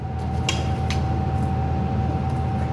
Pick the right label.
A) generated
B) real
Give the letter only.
B